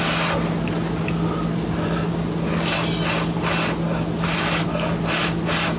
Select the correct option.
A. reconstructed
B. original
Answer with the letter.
B